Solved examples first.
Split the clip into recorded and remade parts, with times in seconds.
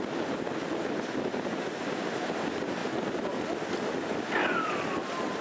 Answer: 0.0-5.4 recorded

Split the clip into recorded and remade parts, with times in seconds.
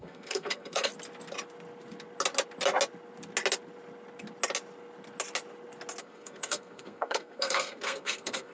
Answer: 0.0-0.9 remade; 0.9-6.0 recorded; 6.0-8.5 remade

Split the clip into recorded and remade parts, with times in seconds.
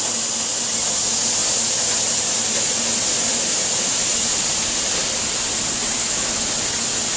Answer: 0.0-6.0 recorded; 6.0-6.5 remade; 6.5-7.2 recorded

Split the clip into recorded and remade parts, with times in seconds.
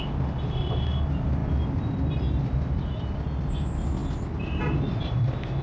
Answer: 0.0-5.6 recorded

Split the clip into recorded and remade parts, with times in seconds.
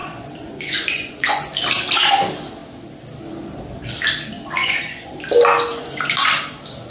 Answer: 0.0-1.4 remade; 1.4-4.6 recorded; 4.6-5.1 remade; 5.1-5.7 recorded; 5.7-6.3 remade; 6.3-6.9 recorded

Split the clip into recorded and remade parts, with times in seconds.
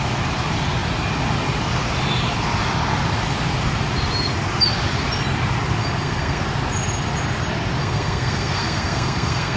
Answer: 0.0-5.8 recorded; 5.8-6.4 remade; 6.4-7.8 recorded; 7.8-9.6 remade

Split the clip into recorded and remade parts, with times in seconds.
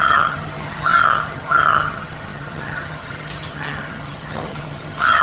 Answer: 0.0-5.2 remade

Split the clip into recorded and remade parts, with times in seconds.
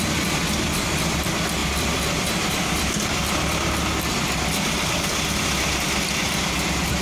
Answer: 0.0-7.0 remade